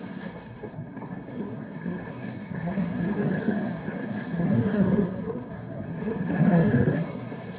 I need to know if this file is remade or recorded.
remade